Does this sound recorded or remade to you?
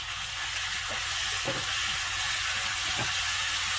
remade